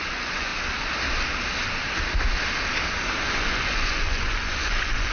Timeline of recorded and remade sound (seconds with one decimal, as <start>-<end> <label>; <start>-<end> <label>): 0.0-0.5 remade; 0.5-3.2 recorded; 3.2-5.1 remade